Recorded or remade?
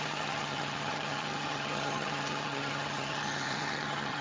remade